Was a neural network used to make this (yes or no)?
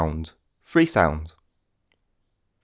no